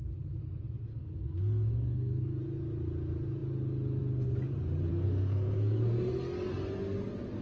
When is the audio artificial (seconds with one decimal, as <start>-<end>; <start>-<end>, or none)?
0.9-2.4; 4.9-5.8